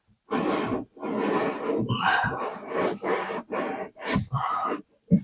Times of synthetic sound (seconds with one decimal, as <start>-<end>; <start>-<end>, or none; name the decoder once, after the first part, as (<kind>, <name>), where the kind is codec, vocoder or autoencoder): 1.8-5.2 (vocoder, BigVGAN v2)